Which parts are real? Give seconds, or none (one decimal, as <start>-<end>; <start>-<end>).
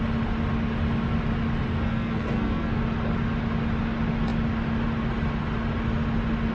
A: 0.0-1.7; 2.8-6.5